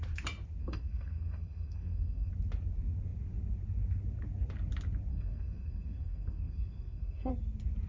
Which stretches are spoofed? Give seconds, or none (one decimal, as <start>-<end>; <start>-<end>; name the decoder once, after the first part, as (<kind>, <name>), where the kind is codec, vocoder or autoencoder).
0.6-2.3 (codec, SNAC); 5.1-7.3